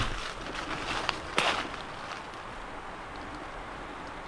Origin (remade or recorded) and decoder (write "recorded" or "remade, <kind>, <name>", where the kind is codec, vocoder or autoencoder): recorded